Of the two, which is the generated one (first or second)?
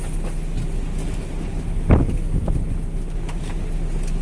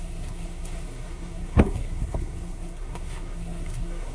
second